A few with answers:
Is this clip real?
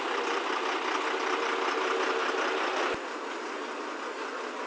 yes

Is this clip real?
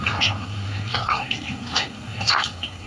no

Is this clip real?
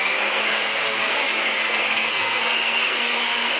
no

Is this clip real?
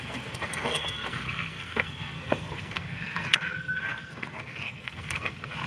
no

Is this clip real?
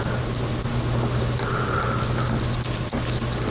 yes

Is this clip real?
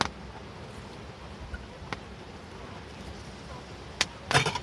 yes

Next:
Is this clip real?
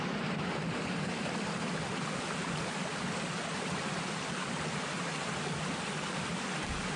yes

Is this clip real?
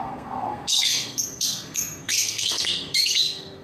no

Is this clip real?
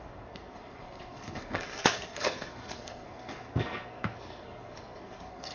no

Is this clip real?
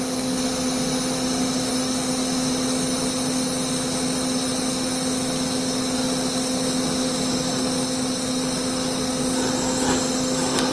yes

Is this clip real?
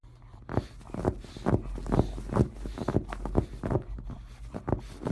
yes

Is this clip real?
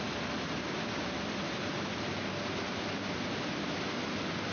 yes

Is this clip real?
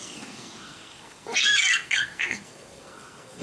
no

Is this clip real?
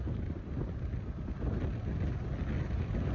yes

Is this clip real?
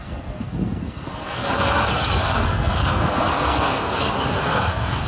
no